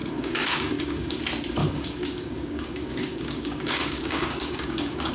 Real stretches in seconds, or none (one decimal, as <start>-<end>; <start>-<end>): 1.2-1.6